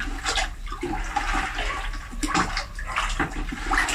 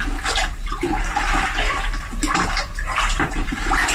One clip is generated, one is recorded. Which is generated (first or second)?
second